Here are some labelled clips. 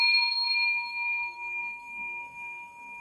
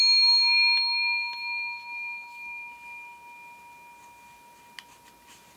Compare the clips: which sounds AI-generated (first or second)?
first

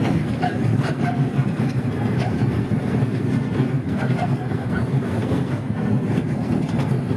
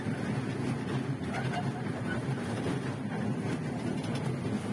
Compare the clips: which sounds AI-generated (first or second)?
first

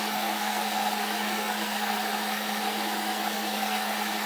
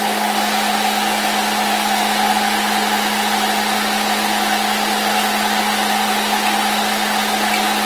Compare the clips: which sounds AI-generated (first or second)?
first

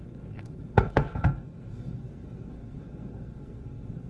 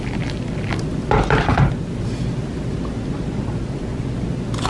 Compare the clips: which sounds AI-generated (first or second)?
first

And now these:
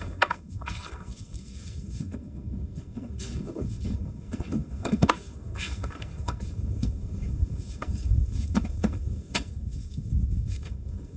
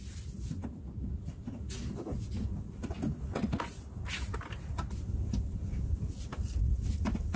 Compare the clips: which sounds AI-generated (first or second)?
first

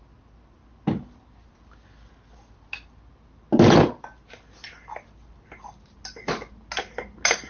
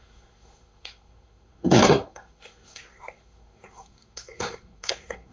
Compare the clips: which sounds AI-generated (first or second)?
second